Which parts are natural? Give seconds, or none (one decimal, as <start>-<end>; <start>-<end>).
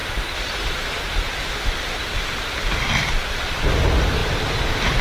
3.0-4.2